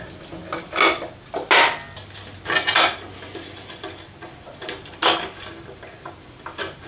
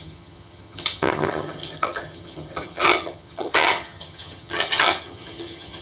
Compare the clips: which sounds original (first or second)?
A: first